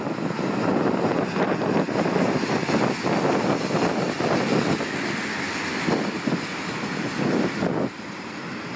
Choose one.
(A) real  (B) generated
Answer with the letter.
A